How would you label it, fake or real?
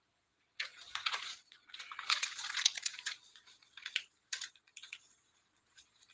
fake